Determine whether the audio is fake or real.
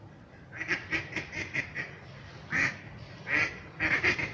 real